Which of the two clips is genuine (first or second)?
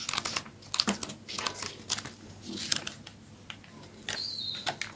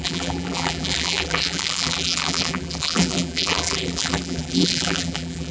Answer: first